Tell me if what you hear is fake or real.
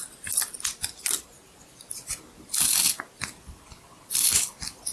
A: fake